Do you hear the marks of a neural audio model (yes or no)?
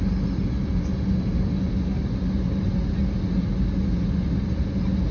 no